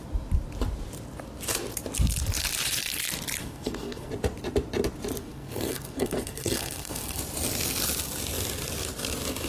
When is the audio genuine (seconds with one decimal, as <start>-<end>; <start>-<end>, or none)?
0.0-3.4; 4.1-5.2; 7.2-9.5